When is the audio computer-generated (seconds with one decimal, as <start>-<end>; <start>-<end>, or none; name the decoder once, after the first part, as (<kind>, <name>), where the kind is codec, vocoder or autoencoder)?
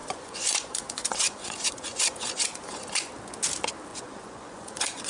0.0-3.1 (vocoder, Vocos); 3.9-5.1